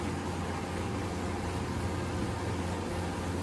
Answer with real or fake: real